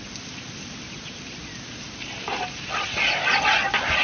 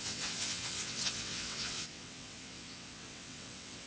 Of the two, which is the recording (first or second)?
first